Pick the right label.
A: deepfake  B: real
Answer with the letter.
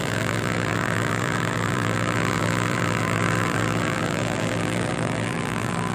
A